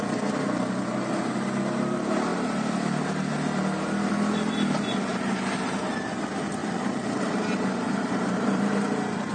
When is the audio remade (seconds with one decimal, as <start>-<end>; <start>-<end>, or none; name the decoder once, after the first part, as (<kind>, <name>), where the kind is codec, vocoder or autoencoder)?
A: 5.1-5.8 (vocoder, BigVGAN v2); 6.6-8.8